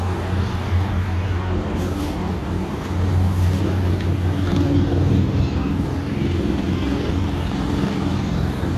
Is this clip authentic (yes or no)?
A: no